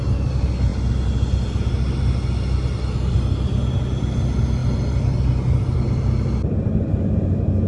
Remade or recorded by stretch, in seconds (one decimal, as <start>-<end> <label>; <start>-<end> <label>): 0.0-7.7 recorded